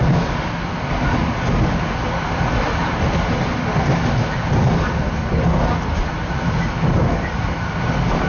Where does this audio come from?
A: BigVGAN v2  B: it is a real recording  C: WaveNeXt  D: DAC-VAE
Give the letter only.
B